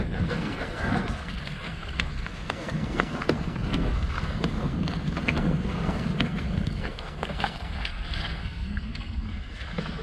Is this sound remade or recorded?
remade